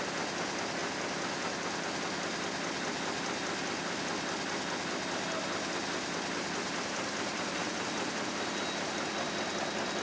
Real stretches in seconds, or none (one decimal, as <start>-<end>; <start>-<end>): 0.0-10.0